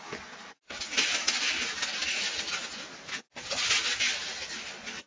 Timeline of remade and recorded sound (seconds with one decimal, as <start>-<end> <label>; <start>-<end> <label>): 0.0-5.1 recorded